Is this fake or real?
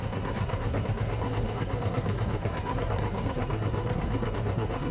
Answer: fake